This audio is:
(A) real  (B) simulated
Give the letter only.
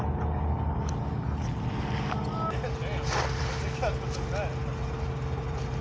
A